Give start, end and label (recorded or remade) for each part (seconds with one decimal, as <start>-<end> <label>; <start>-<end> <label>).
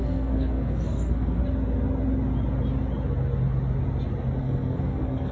0.0-1.4 remade; 1.4-4.4 recorded; 4.4-5.3 remade